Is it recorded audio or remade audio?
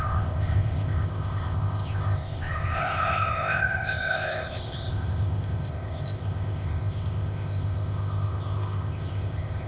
remade